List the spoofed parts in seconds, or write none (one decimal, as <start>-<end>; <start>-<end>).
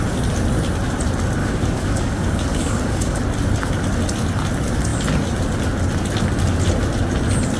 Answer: 1.4-3.2